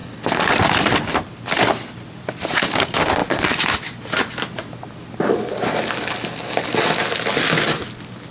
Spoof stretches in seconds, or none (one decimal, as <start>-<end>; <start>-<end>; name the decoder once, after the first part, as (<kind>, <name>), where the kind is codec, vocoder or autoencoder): none